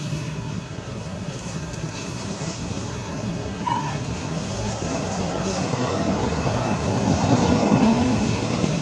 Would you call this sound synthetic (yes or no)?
yes